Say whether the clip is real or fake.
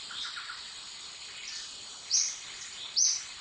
real